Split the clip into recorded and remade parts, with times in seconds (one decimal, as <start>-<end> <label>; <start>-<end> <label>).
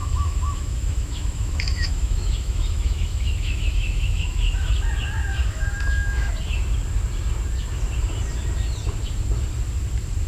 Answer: 0.0-4.7 remade; 4.7-5.3 recorded; 5.3-6.3 remade; 6.3-10.3 recorded